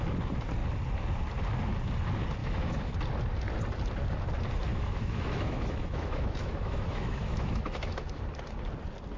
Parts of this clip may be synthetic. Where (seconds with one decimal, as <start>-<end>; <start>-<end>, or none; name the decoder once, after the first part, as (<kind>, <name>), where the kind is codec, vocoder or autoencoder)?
2.4-2.9 (autoencoder, DAC-VAE); 4.7-8.2